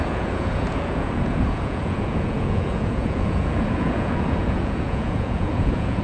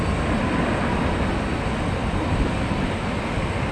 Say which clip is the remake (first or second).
first